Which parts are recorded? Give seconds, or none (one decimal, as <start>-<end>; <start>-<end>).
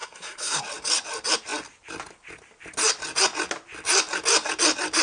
0.6-5.0